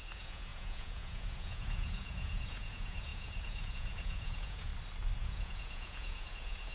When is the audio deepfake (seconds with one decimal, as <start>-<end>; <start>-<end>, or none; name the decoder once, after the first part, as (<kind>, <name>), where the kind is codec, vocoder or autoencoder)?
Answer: 0.0-4.7 (vocoder, Vocos); 5.2-6.7